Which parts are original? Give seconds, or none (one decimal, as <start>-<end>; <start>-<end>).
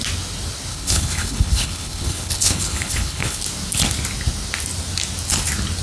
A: 0.0-0.7; 3.4-5.8